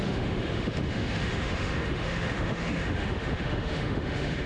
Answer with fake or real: fake